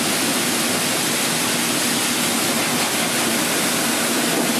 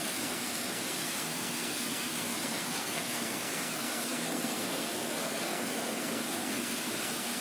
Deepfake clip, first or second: second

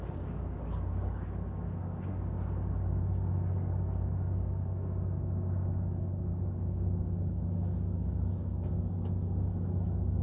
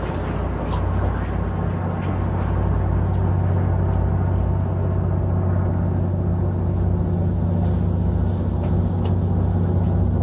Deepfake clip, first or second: first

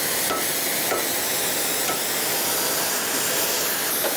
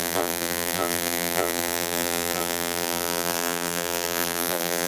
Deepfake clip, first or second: second